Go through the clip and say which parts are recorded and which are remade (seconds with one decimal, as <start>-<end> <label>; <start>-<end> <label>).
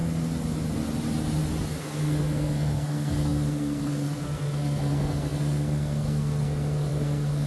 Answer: 0.0-1.8 recorded; 1.8-7.5 remade